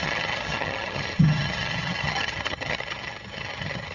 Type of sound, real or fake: fake